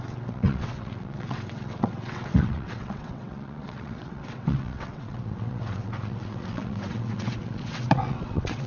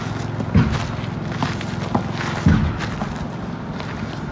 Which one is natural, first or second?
second